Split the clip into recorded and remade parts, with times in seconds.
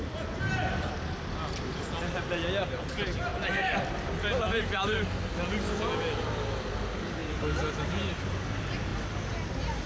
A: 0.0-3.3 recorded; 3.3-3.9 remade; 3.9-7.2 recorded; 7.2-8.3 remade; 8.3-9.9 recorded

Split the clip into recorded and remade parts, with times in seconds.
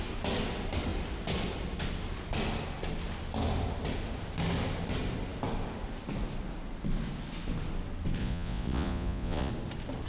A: 0.0-8.2 recorded; 8.2-9.5 remade; 9.5-10.1 recorded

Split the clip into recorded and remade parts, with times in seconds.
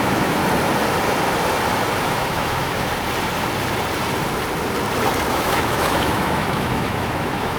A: 0.0-0.4 remade; 0.4-2.0 recorded; 2.0-2.9 remade; 2.9-5.3 recorded; 5.3-7.6 remade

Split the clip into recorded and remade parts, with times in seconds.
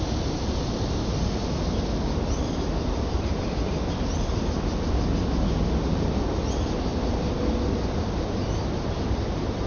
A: 0.0-9.7 recorded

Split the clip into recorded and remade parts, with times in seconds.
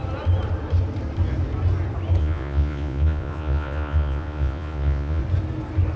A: 0.0-2.2 recorded; 2.2-5.2 remade; 5.2-6.0 recorded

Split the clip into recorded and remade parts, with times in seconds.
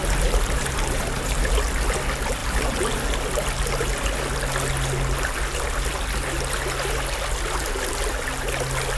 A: 0.0-1.4 remade; 1.4-2.4 recorded; 2.4-3.0 remade; 3.0-9.0 recorded